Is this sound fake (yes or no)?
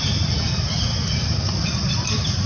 no